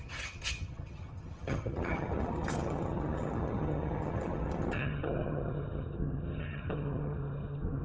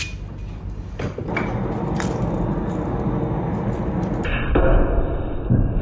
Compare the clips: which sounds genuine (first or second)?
second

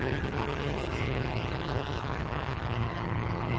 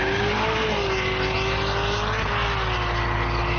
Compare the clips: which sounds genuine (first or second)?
second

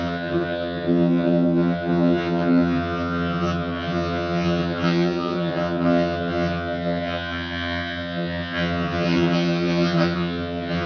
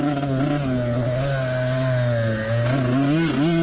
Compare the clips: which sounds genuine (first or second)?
second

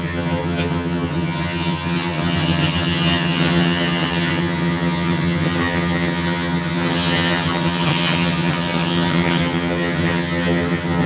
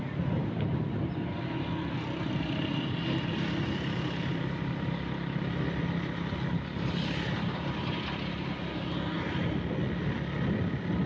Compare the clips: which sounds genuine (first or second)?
second